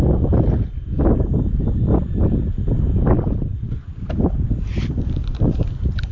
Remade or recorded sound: recorded